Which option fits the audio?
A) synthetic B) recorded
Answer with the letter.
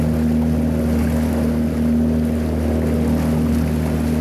B